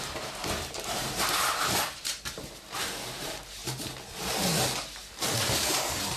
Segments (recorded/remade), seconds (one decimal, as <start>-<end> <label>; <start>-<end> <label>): 0.0-3.6 remade; 3.6-6.2 recorded